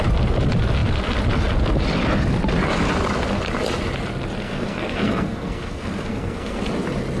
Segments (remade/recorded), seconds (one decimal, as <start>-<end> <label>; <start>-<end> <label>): 0.0-4.4 recorded; 4.4-6.6 remade; 6.6-7.2 recorded